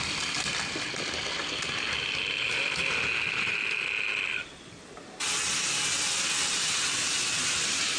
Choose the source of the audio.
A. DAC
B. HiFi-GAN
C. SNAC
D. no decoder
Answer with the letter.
D